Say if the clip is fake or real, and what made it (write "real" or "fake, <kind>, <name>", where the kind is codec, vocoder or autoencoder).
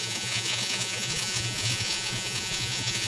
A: fake, vocoder, Vocos